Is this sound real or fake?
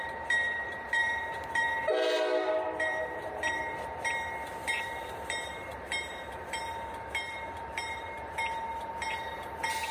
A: fake